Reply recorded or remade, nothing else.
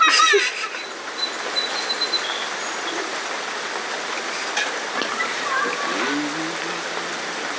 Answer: remade